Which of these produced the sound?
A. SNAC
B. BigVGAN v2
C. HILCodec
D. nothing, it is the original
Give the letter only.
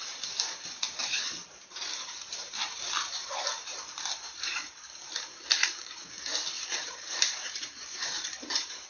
B